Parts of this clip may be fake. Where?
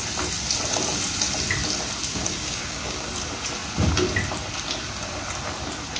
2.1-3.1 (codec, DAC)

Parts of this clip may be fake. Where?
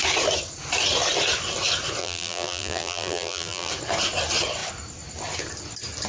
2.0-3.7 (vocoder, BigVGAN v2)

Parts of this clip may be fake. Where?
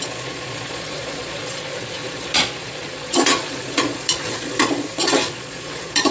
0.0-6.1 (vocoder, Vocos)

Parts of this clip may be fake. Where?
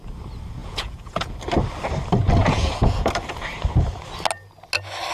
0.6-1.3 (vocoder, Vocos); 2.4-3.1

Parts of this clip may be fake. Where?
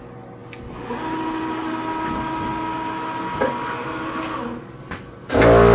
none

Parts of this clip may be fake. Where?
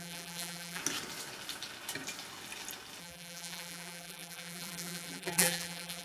0.0-0.8 (vocoder, BigVGAN v2); 3.0-6.0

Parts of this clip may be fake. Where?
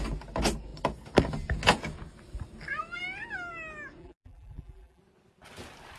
4.0-5.0 (vocoder, BigVGAN v2)